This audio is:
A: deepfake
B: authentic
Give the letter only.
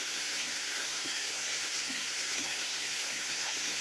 A